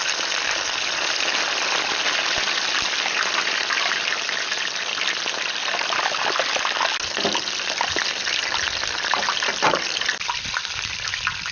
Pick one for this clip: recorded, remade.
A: recorded